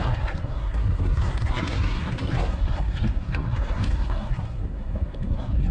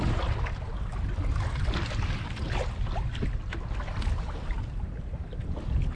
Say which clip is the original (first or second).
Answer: second